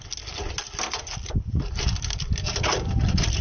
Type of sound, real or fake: real